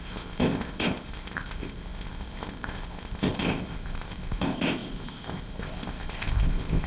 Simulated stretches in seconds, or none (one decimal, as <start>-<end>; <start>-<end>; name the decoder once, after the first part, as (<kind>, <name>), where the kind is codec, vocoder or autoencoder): 0.0-6.9 (codec, ZipCodec)